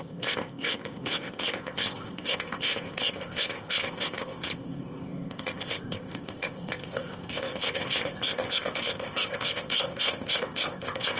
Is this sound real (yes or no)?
no